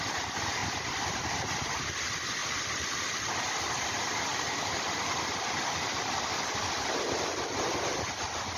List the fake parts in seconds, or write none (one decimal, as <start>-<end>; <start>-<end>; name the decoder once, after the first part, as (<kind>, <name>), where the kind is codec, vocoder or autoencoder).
0.6-1.3 (vocoder, BigVGAN v2); 2.4-6.6